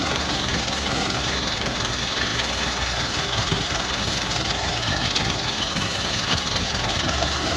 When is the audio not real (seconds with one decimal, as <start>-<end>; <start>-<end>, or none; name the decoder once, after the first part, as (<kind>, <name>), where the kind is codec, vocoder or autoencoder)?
0.0-7.6 (codec, SNAC)